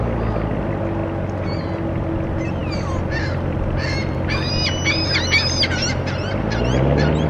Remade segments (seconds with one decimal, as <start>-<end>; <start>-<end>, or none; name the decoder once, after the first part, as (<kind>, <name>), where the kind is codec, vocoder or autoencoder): none